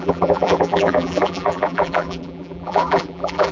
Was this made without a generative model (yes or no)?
no